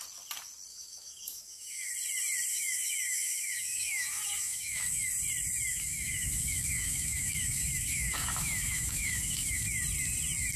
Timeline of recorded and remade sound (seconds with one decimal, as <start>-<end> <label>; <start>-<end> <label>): 0.0-0.7 recorded; 0.7-1.9 remade; 1.9-2.5 recorded; 2.5-5.1 remade; 5.1-5.7 recorded; 5.7-9.6 remade; 9.6-10.6 recorded